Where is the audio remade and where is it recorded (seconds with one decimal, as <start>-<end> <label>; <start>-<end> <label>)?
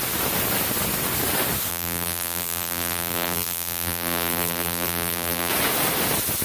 0.0-1.7 recorded; 1.7-5.5 remade; 5.5-6.4 recorded